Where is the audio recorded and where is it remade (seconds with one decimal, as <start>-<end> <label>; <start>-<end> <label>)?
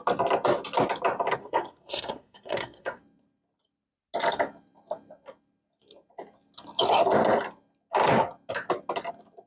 0.0-1.4 recorded; 1.4-3.0 remade; 3.0-9.5 recorded